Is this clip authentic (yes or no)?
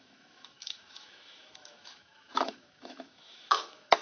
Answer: no